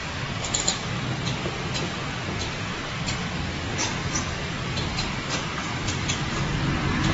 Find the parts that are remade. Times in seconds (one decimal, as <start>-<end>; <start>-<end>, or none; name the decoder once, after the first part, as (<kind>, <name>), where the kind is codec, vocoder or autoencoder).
1.7-7.1 (vocoder, BigVGAN v2)